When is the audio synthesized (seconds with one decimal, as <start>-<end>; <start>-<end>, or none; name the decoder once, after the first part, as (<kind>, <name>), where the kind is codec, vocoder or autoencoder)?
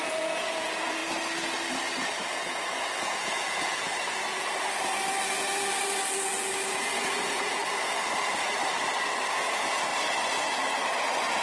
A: 0.0-1.0 (vocoder, Vocos); 2.2-3.9; 6.7-7.6; 9.3-9.9